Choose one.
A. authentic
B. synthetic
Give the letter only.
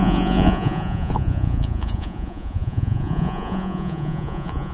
B